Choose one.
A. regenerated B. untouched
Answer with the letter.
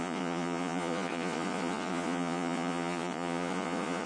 A